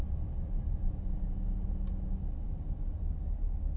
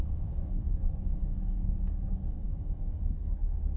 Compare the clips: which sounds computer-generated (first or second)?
second